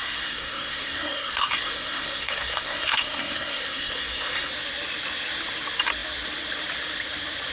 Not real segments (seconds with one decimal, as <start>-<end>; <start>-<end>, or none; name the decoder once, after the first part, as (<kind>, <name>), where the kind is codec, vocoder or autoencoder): 0.0-4.5 (codec, SNAC)